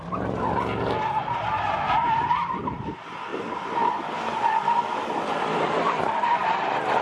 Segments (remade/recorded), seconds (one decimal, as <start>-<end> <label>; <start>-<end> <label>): 0.0-7.0 remade